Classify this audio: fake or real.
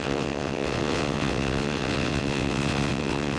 fake